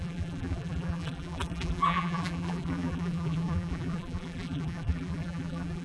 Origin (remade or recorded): remade